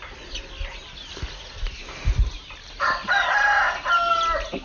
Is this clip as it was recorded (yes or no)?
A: yes